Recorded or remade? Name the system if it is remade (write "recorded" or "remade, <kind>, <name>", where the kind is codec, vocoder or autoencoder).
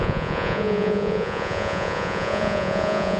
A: remade, vocoder, Vocos